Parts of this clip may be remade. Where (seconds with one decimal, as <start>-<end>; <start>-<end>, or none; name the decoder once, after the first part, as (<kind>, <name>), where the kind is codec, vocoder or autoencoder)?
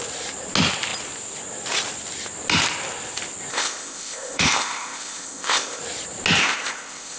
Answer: 3.5-5.8 (codec, ZipCodec); 6.4-7.2